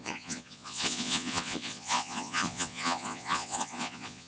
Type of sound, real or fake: fake